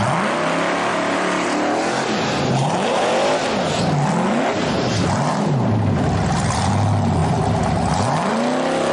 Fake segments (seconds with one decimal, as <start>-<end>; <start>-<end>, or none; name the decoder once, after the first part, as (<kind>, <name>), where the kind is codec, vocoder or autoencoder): 0.9-3.0 (vocoder, BigVGAN v2); 4.5-6.7; 7.2-7.9